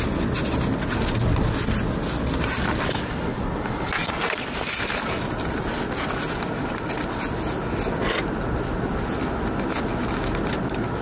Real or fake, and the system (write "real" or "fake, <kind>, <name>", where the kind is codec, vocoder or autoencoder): real